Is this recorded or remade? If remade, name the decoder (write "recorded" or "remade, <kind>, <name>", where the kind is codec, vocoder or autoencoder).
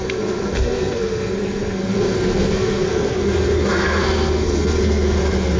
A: remade, codec, SNAC